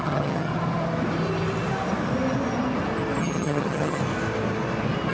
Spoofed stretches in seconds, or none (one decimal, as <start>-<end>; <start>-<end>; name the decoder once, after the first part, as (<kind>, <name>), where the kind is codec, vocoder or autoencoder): 0.0-0.5 (vocoder, HiFi-GAN); 3.2-4.0